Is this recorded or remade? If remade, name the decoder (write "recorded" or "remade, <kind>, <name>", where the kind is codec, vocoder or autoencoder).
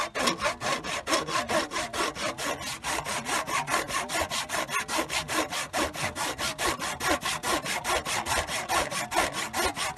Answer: recorded